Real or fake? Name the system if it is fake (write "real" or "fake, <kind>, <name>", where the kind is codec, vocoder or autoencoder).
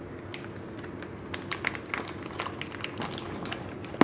real